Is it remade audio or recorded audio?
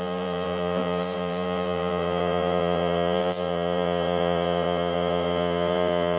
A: remade